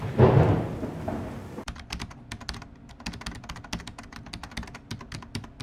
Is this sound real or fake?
real